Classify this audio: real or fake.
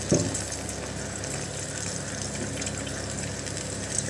real